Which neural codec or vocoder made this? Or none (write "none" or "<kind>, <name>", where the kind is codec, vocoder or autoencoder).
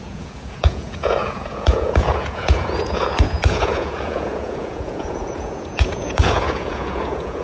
vocoder, Vocos